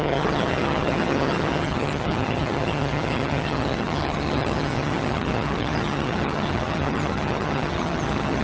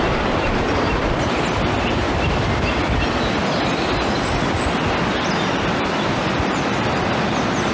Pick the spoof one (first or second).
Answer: first